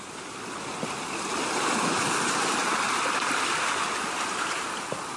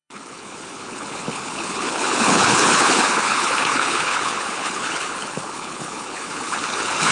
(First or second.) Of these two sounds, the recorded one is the first